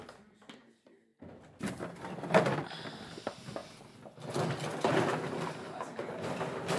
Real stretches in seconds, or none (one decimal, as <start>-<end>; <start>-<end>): 0.0-6.8